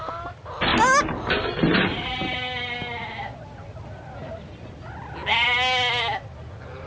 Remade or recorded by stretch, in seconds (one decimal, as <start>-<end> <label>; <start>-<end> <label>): 0.0-6.9 recorded